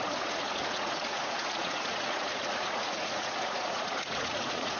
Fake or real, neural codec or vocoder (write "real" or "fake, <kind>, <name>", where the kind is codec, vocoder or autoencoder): fake, vocoder, Vocos